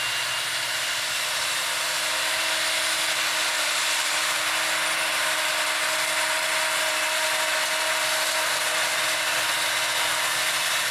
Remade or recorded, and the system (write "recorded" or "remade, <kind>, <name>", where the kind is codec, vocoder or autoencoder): recorded